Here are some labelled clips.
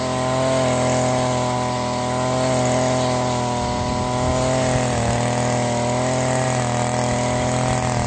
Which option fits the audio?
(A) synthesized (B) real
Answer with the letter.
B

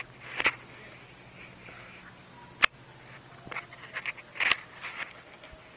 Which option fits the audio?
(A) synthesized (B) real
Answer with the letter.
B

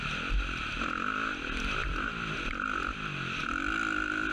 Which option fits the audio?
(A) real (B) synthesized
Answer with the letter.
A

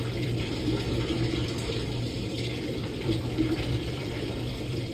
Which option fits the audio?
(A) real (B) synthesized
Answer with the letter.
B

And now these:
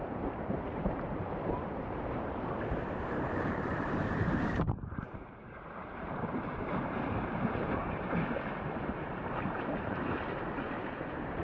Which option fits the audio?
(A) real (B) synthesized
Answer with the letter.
B